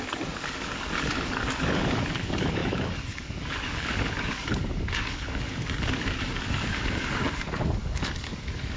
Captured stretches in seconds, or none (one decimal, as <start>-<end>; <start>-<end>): none